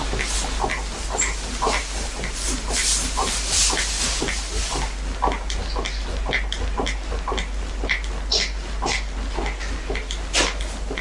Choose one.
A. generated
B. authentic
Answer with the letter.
B